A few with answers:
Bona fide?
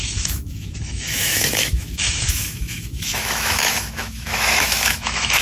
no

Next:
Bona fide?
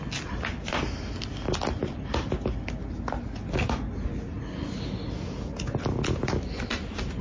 yes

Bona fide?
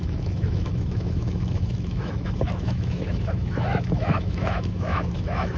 no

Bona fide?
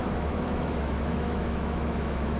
no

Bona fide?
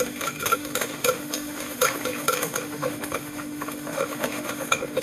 no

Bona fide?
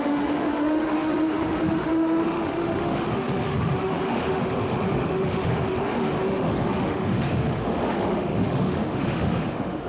no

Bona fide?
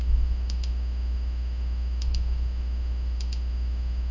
no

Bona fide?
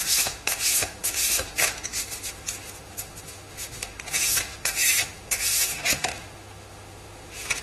no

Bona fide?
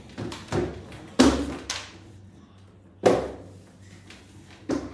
yes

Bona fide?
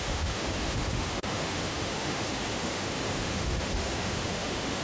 no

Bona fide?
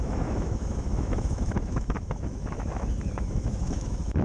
no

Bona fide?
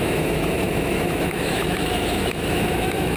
no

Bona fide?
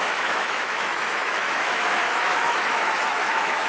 no